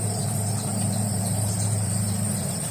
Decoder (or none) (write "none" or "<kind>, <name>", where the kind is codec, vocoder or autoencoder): vocoder, BigVGAN v2